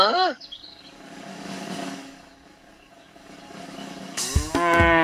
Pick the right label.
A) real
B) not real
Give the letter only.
B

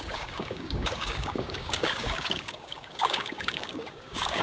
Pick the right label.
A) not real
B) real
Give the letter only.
A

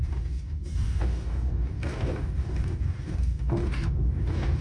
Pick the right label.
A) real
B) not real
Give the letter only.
B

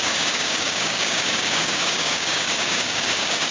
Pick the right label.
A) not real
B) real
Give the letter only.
A